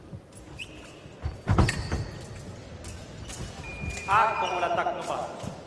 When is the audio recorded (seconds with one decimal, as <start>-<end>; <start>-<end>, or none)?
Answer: 0.0-5.7